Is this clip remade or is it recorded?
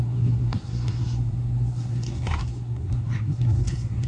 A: remade